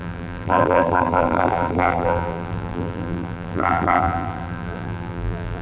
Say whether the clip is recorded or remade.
remade